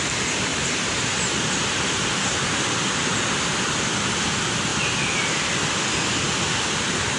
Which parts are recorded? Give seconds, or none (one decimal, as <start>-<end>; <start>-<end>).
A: 0.0-0.5; 2.6-7.2